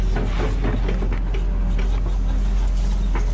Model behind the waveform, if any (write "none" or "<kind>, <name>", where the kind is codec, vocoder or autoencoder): none